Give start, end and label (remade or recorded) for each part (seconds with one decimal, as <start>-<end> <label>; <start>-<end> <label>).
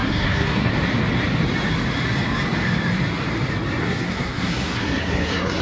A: 0.0-0.7 remade; 0.7-3.8 recorded; 3.8-5.6 remade